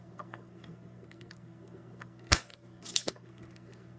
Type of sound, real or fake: fake